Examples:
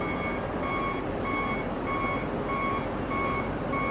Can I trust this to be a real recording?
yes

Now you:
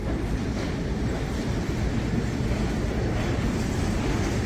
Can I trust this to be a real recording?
yes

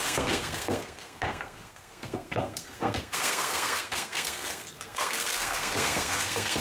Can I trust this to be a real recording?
no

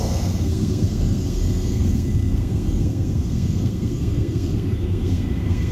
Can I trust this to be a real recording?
no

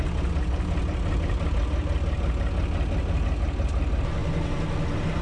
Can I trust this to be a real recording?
yes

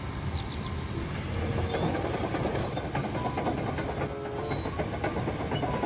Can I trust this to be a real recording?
yes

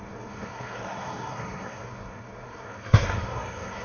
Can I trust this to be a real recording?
no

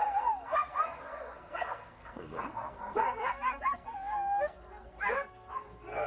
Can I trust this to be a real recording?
no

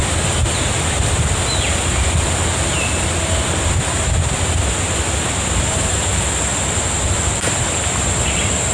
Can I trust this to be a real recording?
yes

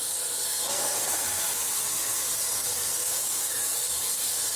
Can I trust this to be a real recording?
no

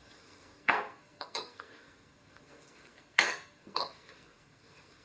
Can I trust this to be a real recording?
no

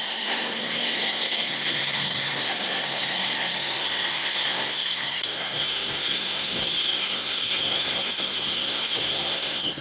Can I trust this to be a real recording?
no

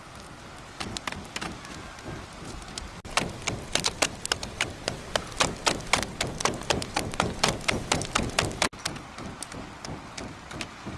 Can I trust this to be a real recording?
yes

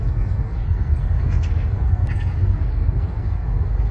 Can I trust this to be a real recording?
no